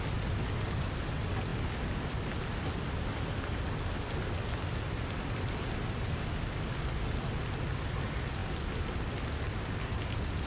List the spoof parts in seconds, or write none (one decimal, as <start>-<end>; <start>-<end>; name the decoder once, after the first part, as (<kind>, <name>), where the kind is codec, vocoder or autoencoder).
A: none